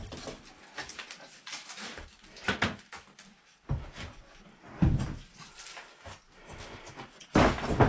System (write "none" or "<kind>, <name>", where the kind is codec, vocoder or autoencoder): none